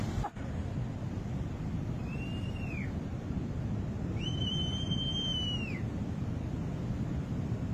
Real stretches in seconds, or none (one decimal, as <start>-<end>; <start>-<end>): 0.0-7.7